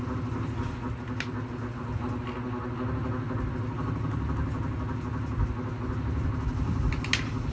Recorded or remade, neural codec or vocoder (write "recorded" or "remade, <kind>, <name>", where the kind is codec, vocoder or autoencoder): recorded